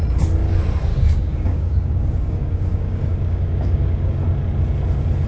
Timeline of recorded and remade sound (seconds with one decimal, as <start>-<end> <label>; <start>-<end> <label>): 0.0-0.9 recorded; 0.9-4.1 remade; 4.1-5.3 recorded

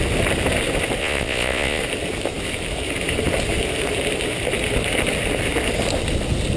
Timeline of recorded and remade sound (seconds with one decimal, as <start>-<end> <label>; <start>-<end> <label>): 0.0-1.0 recorded; 1.0-1.8 remade; 1.8-6.6 recorded

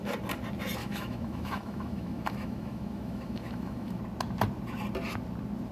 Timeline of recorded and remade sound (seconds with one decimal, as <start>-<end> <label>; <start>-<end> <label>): 0.0-0.8 recorded; 0.8-4.0 remade; 4.0-5.7 recorded

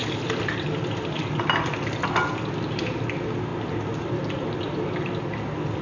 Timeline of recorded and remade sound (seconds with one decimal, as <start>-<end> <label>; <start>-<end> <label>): 0.0-5.8 recorded

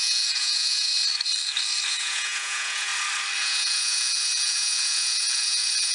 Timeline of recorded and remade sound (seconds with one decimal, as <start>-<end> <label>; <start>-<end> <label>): 0.0-0.9 remade; 0.9-1.9 recorded; 1.9-2.9 remade; 2.9-3.4 recorded; 3.4-5.9 remade

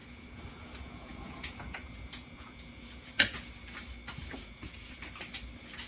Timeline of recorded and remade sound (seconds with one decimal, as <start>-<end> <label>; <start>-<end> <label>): 0.0-3.5 remade; 3.5-4.2 recorded; 4.2-5.0 remade; 5.0-5.9 recorded

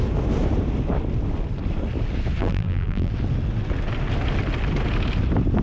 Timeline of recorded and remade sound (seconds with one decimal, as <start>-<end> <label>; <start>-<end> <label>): 0.0-2.4 recorded; 2.4-3.1 remade; 3.1-5.6 recorded

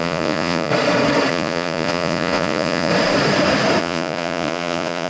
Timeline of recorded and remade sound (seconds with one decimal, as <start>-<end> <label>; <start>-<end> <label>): 0.0-0.7 remade; 0.7-1.3 recorded; 1.3-2.9 remade; 2.9-3.8 recorded; 3.8-5.1 remade